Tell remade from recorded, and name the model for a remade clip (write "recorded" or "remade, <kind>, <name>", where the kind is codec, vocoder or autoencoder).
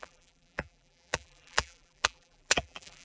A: remade, vocoder, BigVGAN v2